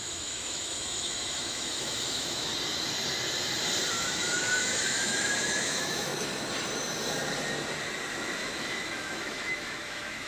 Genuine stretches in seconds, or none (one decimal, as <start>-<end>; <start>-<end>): 2.5-3.9; 6.1-8.1